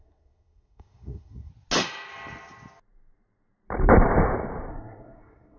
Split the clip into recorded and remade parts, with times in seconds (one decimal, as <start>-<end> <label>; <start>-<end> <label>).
0.0-1.5 remade; 1.5-4.7 recorded; 4.7-5.6 remade